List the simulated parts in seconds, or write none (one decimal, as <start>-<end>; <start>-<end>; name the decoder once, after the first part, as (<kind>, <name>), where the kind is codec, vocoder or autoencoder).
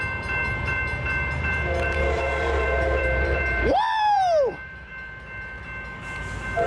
0.0-4.9 (vocoder, BigVGAN v2)